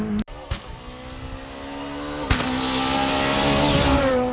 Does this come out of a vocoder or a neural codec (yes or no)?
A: no